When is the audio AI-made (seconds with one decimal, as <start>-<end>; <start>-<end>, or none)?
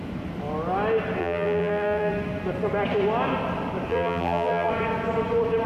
1.2-2.1; 3.9-4.7